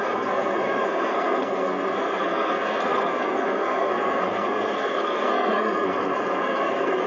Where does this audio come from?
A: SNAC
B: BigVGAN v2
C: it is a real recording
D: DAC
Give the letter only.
A